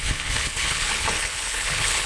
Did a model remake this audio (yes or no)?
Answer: yes